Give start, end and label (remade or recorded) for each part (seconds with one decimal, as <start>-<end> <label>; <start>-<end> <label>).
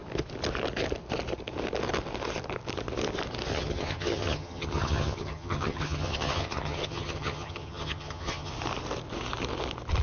0.0-3.5 recorded; 3.5-8.5 remade; 8.5-10.0 recorded